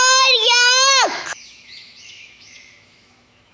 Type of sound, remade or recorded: remade